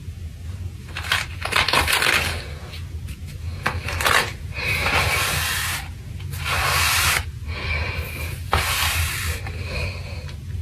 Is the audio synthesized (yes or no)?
no